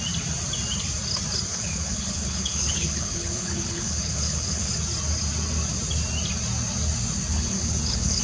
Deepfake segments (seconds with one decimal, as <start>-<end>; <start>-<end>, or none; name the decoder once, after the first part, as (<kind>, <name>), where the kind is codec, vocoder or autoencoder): 1.5-4.7 (codec, HILCodec); 7.3-8.2